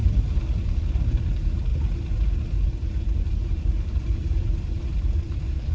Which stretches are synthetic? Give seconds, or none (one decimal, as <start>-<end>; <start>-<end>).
1.0-1.7; 2.9-5.7